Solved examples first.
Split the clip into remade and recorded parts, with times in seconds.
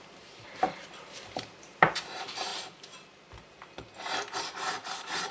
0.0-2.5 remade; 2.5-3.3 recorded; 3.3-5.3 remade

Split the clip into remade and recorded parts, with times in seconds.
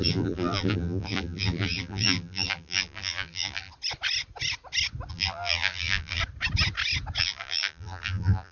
0.0-3.7 remade; 3.7-5.1 recorded; 5.1-6.2 remade; 6.2-7.2 recorded; 7.2-8.5 remade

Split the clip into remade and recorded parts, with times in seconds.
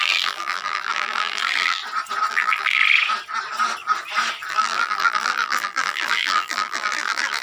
0.0-1.8 remade; 1.8-2.3 recorded; 2.3-2.8 remade; 2.8-4.5 recorded; 4.5-7.4 remade